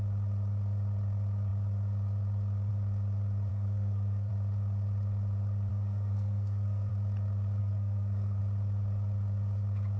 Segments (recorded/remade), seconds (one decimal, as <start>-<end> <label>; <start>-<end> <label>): 0.0-3.5 recorded; 3.5-4.3 remade; 4.3-5.7 recorded; 5.7-6.9 remade; 6.9-7.6 recorded; 7.6-8.4 remade; 8.4-10.0 recorded